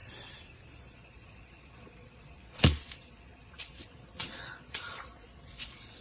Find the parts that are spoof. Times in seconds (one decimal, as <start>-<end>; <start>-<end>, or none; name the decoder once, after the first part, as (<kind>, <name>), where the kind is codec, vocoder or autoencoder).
0.8-6.0 (vocoder, Vocos)